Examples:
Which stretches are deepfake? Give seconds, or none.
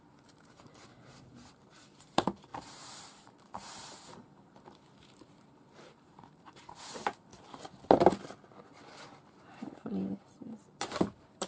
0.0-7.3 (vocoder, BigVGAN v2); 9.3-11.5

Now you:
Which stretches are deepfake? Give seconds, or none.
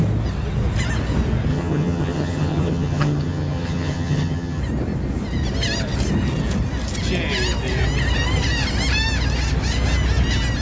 1.5-4.6 (vocoder, HiFi-GAN)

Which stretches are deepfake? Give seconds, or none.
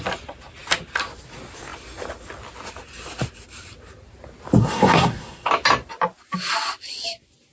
4.6-5.5 (codec, SNAC)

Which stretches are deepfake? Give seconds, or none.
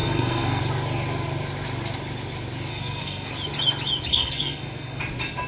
0.0-0.6 (codec, SNAC); 2.7-3.3; 4.1-5.0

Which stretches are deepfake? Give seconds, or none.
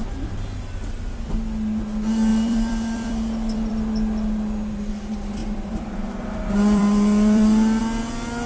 2.3-3.9 (vocoder, BigVGAN v2); 5.4-7.8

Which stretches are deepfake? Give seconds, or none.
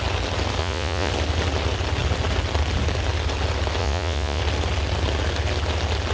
0.6-1.1 (vocoder, Vocos); 3.8-4.4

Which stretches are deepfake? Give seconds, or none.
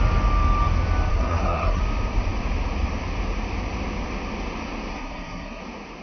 1.1-1.8 (codec, SNAC); 4.9-5.6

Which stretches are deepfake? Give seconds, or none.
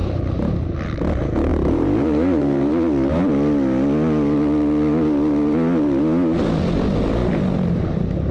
1.5-2.7 (vocoder, BigVGAN v2); 7.2-8.3